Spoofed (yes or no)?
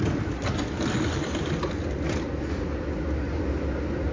no